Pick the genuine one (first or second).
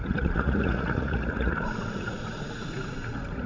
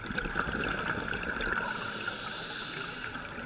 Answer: second